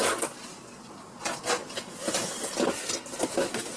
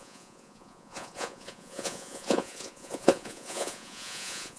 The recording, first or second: first